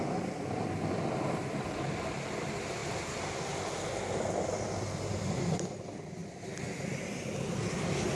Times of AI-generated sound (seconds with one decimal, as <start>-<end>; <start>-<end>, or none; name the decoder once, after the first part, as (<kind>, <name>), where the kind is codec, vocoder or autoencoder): none